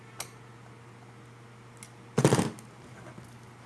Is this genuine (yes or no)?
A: yes